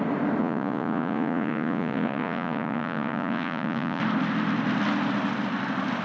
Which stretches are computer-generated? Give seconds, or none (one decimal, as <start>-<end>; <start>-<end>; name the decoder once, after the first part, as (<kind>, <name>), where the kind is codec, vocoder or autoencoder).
0.4-4.0 (vocoder, Vocos)